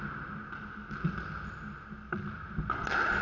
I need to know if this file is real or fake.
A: real